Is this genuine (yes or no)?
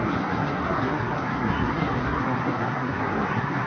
no